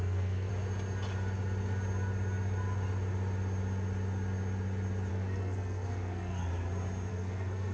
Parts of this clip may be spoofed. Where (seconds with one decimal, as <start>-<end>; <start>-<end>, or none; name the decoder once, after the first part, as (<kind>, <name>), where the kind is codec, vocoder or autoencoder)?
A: 0.0-0.5 (codec, SNAC); 5.1-6.5; 7.1-7.7